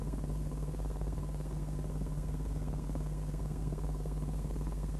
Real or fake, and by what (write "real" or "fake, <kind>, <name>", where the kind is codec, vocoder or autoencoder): fake, codec, SNAC